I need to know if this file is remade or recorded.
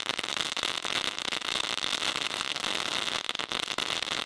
recorded